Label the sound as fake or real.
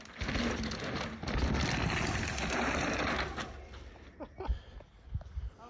real